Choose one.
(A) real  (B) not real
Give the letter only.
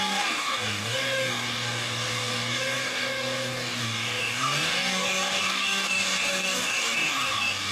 B